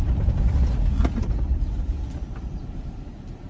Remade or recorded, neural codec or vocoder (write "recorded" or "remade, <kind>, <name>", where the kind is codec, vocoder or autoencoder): recorded